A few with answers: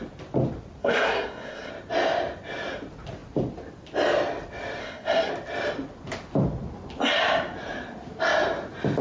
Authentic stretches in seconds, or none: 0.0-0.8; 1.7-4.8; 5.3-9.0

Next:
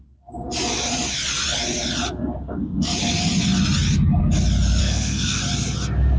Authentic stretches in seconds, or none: 0.0-4.8; 5.4-6.2

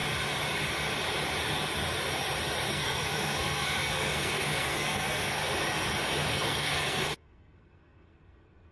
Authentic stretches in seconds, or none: 0.0-2.7; 5.4-6.3